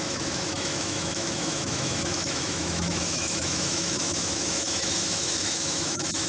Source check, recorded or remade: remade